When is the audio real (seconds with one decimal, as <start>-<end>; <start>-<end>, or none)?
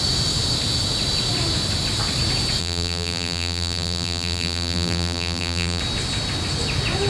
0.0-2.6; 5.8-7.1